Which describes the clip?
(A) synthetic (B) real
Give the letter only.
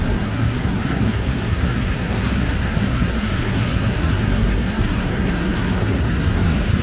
A